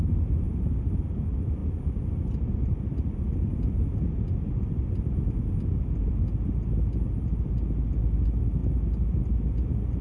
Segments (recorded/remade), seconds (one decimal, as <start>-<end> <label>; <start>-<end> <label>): 0.0-10.0 recorded